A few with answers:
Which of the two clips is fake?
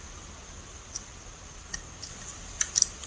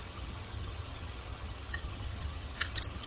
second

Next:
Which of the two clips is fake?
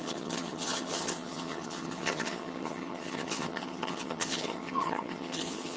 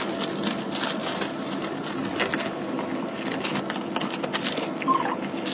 first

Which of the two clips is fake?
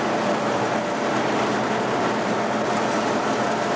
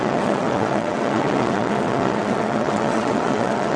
second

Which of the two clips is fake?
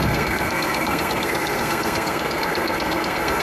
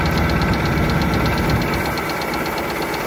first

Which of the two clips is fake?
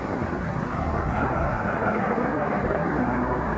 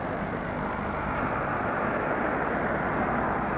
first